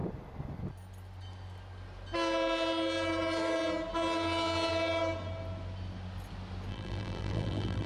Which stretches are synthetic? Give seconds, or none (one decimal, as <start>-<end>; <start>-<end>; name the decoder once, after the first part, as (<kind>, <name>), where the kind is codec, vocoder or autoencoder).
6.7-7.9 (vocoder, BigVGAN v2)